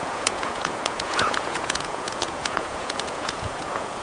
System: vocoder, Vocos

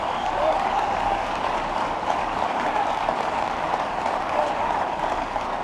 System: codec, DAC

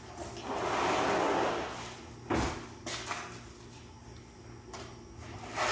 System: none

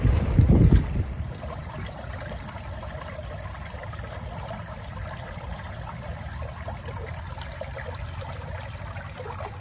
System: vocoder, BigVGAN v2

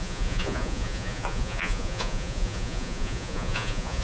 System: vocoder, Vocos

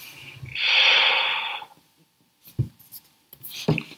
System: none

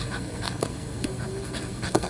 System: codec, SNAC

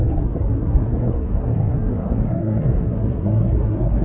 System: codec, SNAC